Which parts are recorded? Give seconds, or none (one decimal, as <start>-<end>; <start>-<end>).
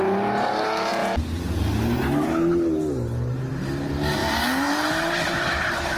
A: 0.0-6.0